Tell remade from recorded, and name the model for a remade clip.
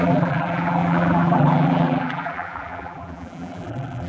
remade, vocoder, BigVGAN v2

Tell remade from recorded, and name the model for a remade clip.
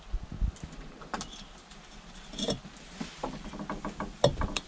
recorded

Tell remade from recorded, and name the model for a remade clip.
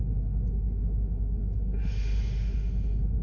remade, autoencoder, DAC-VAE